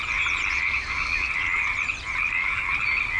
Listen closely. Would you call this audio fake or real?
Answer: real